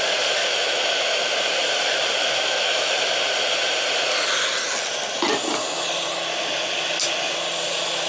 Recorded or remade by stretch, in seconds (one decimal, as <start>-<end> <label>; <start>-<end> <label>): 0.0-0.4 recorded; 0.4-1.2 remade; 1.2-2.2 recorded; 2.2-2.9 remade; 2.9-8.1 recorded